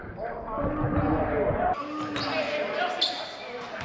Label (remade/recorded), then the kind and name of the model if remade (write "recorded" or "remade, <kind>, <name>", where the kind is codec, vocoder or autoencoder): recorded